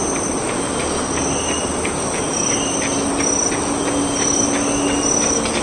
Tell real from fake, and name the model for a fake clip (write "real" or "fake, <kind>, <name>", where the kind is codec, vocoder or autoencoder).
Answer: fake, vocoder, BigVGAN v2